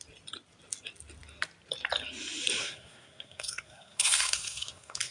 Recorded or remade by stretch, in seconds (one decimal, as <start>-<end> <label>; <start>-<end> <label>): 0.0-2.6 recorded; 2.6-5.1 remade